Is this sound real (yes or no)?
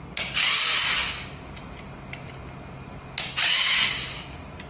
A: yes